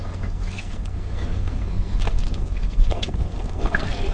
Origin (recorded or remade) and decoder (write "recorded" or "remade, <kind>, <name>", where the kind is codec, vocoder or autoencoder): remade, codec, SNAC